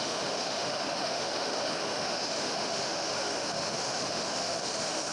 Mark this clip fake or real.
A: fake